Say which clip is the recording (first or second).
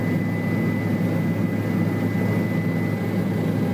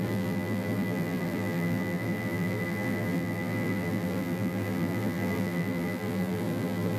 first